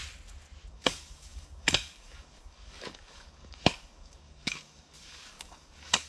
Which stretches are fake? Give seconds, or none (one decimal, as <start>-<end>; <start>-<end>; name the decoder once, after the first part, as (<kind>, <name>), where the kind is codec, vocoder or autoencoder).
0.7-6.1 (codec, DAC)